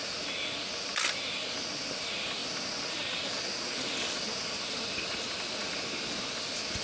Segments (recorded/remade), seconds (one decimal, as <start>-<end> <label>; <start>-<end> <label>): 0.0-6.8 recorded